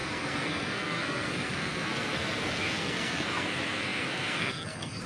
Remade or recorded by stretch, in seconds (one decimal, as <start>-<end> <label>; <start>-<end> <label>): 0.0-5.1 remade